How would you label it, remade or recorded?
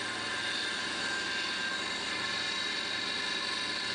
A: recorded